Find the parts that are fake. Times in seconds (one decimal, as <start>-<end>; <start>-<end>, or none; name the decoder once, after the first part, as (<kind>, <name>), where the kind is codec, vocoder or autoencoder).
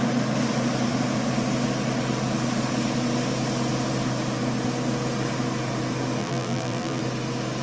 6.2-7.0 (vocoder, BigVGAN v2)